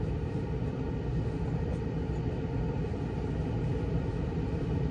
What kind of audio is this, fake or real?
real